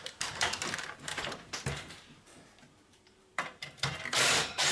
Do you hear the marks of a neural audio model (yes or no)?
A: yes